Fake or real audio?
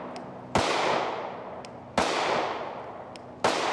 real